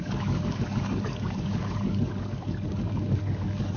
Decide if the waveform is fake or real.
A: fake